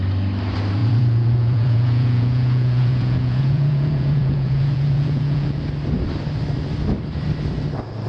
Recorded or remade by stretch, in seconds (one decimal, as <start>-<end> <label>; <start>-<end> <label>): 0.0-0.8 recorded; 0.8-5.6 remade; 5.6-8.1 recorded